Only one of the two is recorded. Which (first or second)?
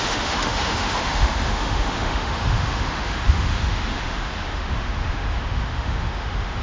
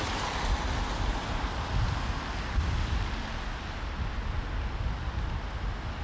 second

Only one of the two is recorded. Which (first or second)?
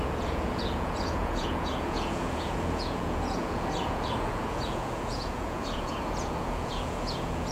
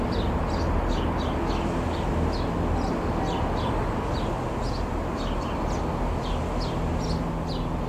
second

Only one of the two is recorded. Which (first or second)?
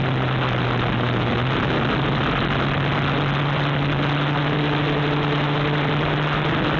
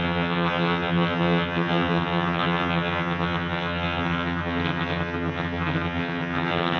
first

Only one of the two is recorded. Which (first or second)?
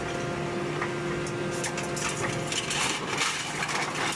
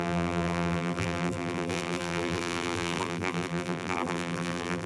first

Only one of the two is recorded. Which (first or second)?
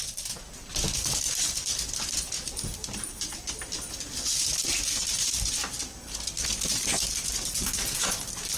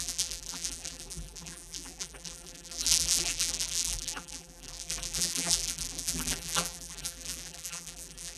first